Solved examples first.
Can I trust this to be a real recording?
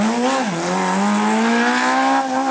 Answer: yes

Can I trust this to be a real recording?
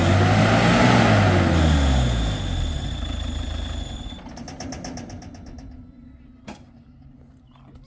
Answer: yes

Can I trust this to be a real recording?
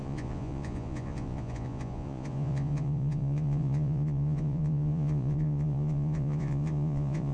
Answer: no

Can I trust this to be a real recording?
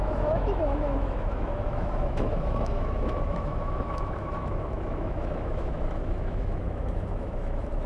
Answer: no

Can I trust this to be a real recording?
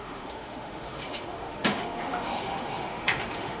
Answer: no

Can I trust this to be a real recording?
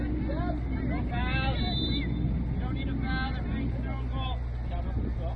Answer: yes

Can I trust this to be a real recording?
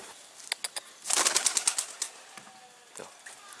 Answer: yes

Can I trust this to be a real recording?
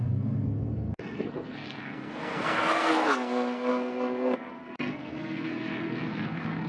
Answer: no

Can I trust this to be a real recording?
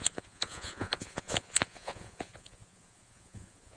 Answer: no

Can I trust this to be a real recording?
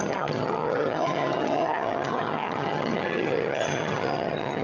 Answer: no